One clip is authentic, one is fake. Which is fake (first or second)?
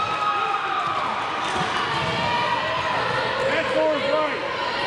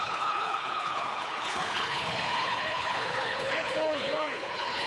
second